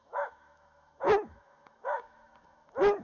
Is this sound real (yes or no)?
no